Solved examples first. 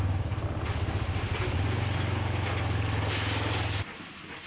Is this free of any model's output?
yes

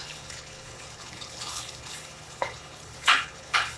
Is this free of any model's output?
no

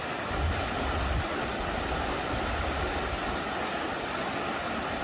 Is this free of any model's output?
yes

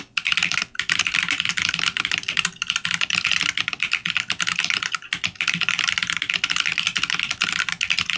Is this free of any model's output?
yes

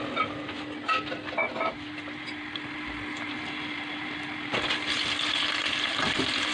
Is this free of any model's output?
yes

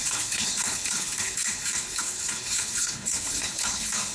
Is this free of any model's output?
no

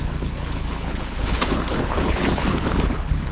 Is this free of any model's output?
no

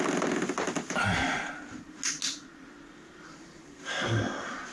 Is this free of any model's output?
yes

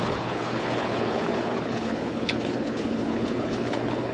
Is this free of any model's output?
no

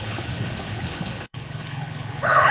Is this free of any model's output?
no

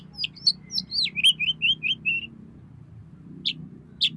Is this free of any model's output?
yes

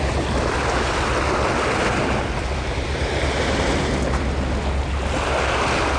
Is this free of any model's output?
yes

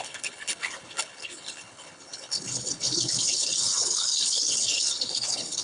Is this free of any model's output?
no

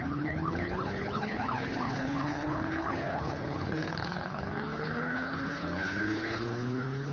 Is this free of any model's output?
no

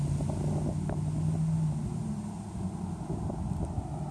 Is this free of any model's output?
yes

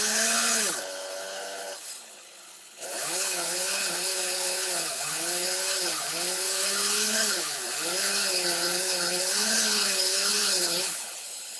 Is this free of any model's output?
no